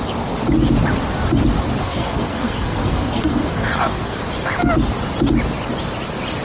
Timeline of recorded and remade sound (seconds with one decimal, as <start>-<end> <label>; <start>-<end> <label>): 0.0-1.8 recorded; 1.8-4.2 remade; 4.2-6.4 recorded